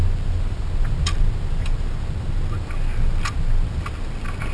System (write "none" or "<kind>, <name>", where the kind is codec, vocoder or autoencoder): none